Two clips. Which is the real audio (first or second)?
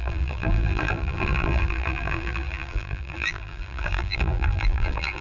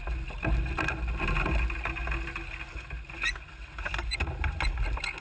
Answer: second